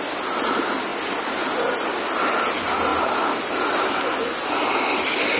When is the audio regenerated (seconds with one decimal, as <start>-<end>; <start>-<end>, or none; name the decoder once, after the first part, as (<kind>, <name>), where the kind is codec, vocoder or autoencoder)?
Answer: none